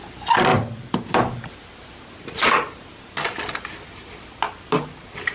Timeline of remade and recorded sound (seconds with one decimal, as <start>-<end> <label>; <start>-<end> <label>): 0.0-0.5 recorded; 0.5-1.1 remade; 1.1-5.3 recorded